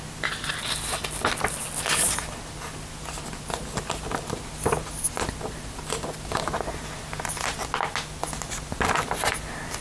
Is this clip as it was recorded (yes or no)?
yes